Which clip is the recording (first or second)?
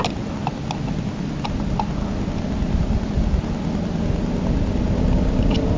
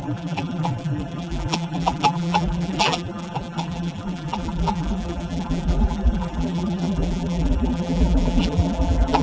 first